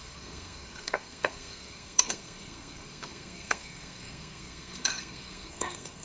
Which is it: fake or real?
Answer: fake